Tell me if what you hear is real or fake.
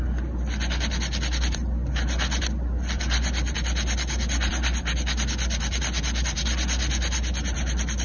real